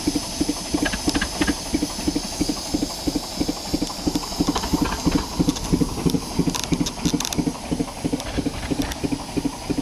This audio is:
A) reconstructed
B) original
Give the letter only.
B